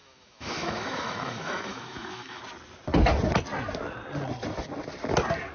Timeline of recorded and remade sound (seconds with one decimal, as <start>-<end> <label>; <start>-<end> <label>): 0.0-2.4 remade; 2.4-5.5 recorded